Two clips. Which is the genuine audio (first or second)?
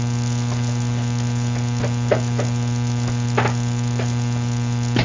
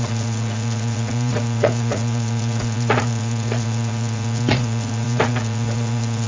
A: first